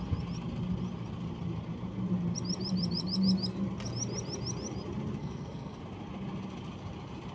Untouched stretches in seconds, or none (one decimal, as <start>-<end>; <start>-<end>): 0.0-5.2; 5.8-7.3